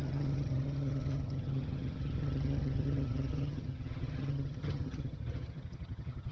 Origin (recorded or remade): remade